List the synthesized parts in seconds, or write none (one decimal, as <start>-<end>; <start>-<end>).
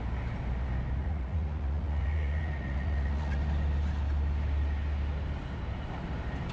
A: 1.0-3.4